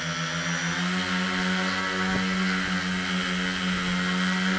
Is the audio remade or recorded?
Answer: recorded